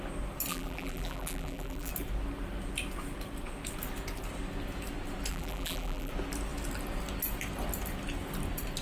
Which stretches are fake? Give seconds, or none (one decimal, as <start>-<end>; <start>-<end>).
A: 0.5-1.9; 5.3-6.1